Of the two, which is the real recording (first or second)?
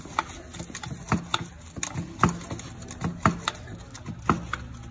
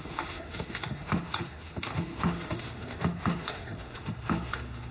first